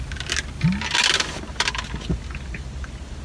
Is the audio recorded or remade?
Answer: recorded